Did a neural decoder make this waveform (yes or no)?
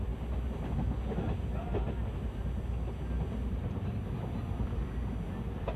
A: no